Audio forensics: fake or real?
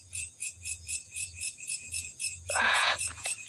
fake